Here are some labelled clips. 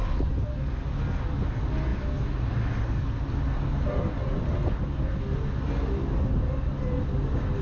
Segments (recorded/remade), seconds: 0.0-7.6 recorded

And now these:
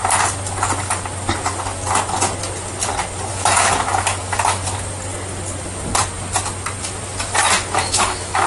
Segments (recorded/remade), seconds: 0.0-3.3 recorded; 3.3-4.6 remade; 4.6-7.4 recorded; 7.4-8.5 remade

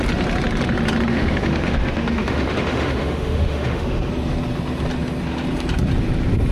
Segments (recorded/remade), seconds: 0.0-1.1 recorded; 1.1-4.1 remade; 4.1-6.5 recorded

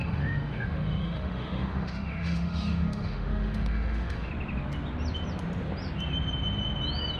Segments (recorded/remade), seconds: 0.0-4.3 remade; 4.3-7.2 recorded